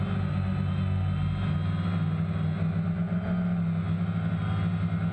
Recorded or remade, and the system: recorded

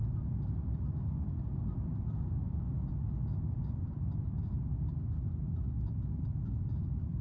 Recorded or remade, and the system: remade, vocoder, BigVGAN v2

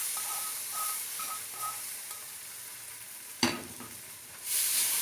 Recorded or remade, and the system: remade, vocoder, BigVGAN v2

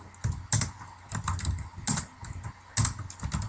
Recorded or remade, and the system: recorded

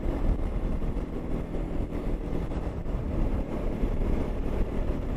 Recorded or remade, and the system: remade, vocoder, BigVGAN v2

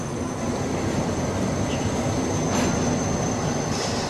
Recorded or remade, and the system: recorded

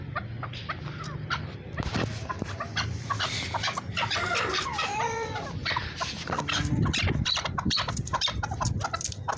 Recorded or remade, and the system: remade, vocoder, BigVGAN v2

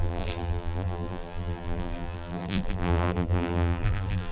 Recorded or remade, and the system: remade, vocoder, BigVGAN v2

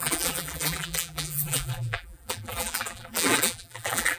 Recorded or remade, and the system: remade, vocoder, BigVGAN v2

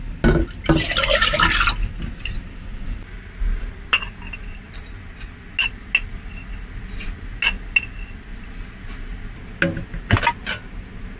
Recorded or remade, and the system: recorded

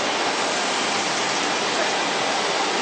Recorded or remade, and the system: recorded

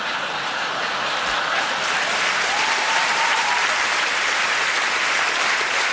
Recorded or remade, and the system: remade, vocoder, BigVGAN v2